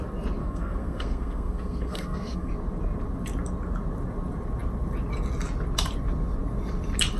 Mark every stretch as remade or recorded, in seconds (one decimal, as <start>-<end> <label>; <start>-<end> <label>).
0.0-0.4 recorded; 0.4-2.5 remade; 2.5-7.2 recorded